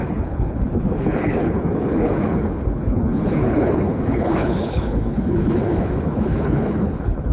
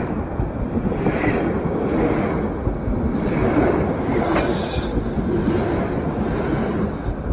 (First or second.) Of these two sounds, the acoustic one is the second